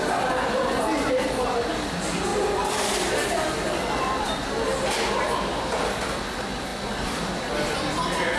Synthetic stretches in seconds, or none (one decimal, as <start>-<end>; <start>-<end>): none